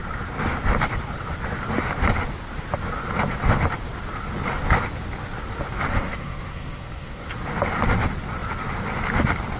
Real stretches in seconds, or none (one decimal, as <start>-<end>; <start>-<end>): 0.0-5.9; 7.3-9.6